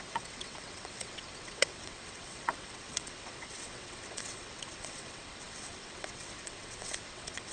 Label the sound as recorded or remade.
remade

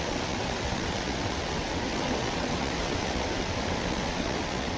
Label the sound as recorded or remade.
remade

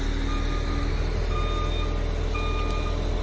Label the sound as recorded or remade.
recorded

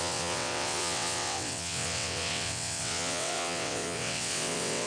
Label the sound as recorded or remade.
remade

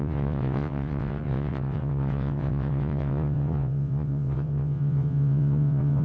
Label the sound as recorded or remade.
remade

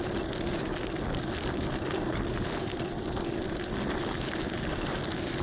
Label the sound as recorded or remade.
recorded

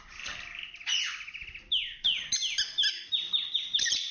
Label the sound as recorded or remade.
recorded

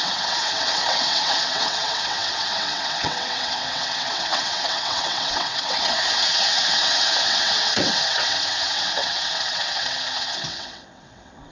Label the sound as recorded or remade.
remade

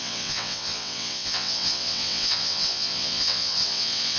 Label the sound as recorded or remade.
remade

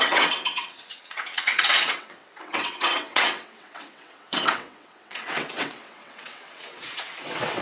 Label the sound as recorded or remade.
remade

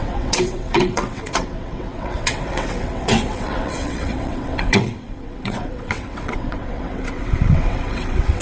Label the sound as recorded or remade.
remade